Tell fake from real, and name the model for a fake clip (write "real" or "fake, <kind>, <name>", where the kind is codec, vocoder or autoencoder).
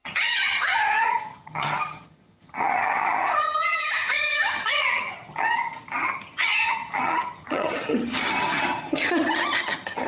fake, vocoder, HiFi-GAN